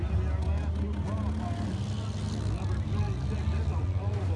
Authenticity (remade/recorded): recorded